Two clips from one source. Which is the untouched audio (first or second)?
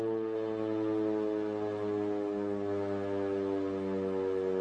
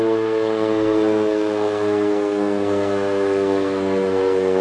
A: first